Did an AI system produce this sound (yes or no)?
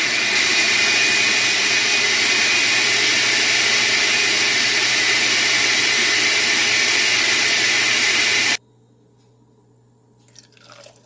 no